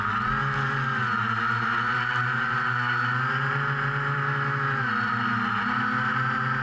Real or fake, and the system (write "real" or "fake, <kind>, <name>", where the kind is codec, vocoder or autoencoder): real